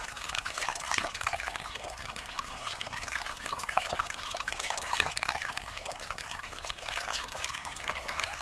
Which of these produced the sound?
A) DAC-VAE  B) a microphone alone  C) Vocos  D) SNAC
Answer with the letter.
D